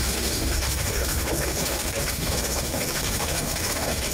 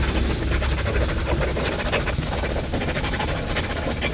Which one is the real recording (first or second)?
second